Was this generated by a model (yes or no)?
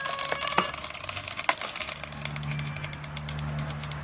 no